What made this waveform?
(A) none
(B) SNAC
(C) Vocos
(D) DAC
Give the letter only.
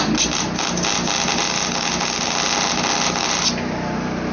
A